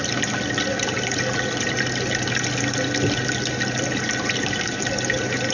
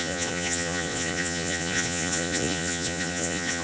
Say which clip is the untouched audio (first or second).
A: first